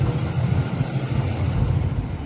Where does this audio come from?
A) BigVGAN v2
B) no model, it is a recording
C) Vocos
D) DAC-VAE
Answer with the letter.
B